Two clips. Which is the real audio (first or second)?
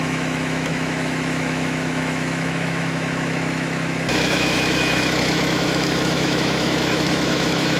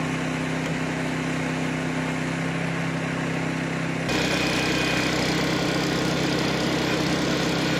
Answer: second